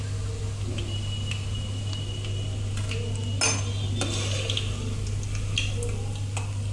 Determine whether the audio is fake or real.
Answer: real